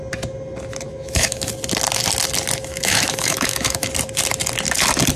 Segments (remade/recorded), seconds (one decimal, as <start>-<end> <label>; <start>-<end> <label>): 0.0-0.9 recorded; 0.9-1.5 remade; 1.5-2.7 recorded; 2.7-3.9 remade; 3.9-5.2 recorded

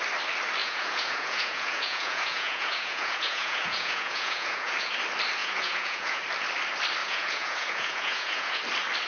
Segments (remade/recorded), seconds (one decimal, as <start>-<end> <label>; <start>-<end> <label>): 0.0-0.6 recorded; 0.6-4.9 remade; 4.9-5.4 recorded; 5.4-6.2 remade; 6.2-7.0 recorded; 7.0-8.6 remade; 8.6-9.1 recorded

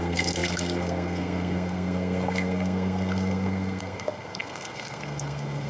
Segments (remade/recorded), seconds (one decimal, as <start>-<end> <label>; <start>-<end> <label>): 0.0-5.7 remade